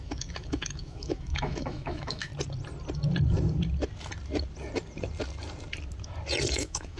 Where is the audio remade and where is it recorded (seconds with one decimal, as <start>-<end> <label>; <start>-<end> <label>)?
0.0-2.3 remade; 2.3-6.5 recorded; 6.5-7.0 remade